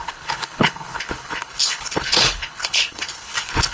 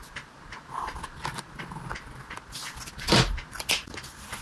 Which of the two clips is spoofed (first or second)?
first